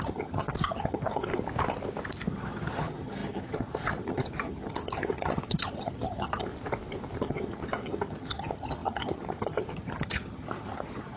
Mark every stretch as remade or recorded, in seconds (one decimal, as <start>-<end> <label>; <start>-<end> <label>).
0.0-1.3 remade; 1.3-2.3 recorded; 2.3-6.5 remade; 6.5-7.2 recorded; 7.2-11.2 remade